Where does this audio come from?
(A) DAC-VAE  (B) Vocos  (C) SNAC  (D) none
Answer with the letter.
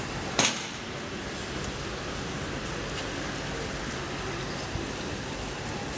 D